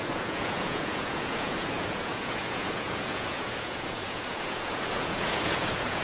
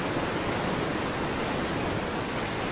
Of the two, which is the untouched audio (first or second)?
second